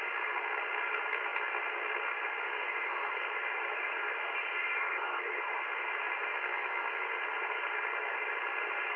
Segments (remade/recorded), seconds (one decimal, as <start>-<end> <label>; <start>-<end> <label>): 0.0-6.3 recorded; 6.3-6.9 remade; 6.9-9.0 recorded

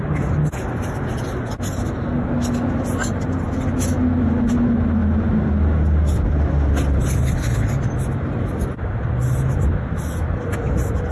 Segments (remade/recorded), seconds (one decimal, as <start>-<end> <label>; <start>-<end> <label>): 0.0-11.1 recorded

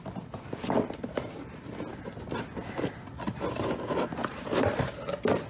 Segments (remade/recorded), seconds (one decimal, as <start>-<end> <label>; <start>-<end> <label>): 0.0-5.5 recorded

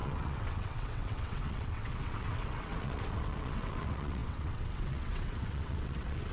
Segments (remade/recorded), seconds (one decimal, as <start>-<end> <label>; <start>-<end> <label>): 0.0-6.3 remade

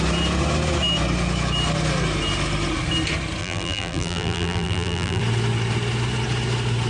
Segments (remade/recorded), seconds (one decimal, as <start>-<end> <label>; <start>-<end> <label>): 0.0-3.4 recorded; 3.4-5.2 remade; 5.2-6.9 recorded